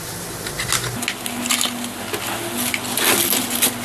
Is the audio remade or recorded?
recorded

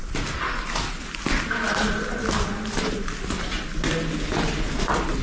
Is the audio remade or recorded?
recorded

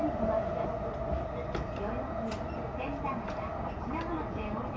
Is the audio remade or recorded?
recorded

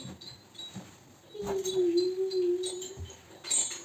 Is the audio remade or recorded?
recorded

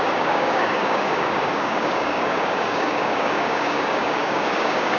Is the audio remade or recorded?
remade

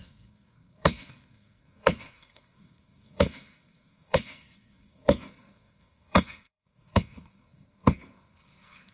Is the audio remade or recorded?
remade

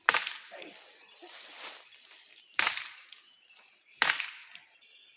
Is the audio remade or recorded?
remade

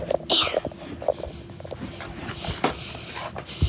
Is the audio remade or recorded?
recorded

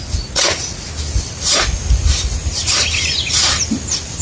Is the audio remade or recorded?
recorded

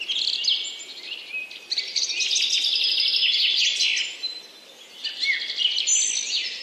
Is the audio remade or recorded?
recorded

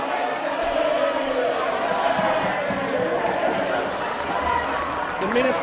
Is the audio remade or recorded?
recorded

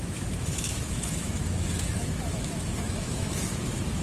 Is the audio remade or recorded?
remade